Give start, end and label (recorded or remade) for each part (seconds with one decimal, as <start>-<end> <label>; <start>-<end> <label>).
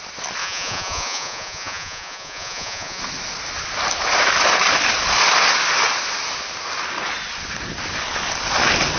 0.0-0.4 recorded; 0.4-3.0 remade; 3.0-9.0 recorded